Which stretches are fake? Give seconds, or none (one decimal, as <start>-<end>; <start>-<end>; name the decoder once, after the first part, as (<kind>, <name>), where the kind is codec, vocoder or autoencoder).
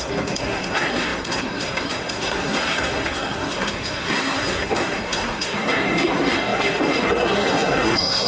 0.0-8.3 (codec, SNAC)